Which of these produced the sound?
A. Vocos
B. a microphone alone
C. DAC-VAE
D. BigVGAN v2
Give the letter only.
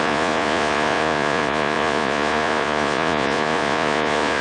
A